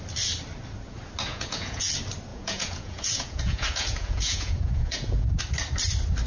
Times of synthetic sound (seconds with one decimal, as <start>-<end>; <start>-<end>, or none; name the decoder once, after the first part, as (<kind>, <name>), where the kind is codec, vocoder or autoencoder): 1.3-1.8 (vocoder, Vocos); 2.3-5.4